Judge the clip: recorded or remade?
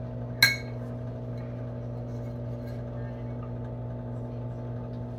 recorded